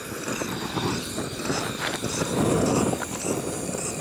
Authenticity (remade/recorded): recorded